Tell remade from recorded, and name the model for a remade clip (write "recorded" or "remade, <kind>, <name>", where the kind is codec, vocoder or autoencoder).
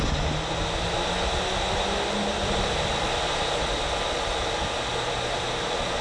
recorded